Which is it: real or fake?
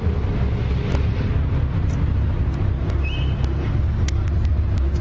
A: real